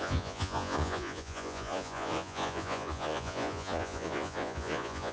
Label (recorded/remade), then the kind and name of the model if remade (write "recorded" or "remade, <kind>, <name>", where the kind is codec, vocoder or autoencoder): remade, vocoder, Vocos